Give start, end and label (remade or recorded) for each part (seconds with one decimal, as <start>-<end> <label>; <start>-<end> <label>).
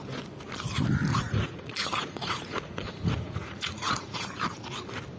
0.0-1.1 recorded; 1.1-4.2 remade; 4.2-5.2 recorded